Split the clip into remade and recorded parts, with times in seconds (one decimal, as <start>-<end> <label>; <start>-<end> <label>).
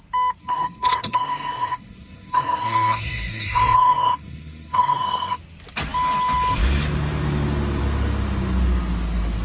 0.0-0.4 recorded; 0.4-5.4 remade; 5.4-9.4 recorded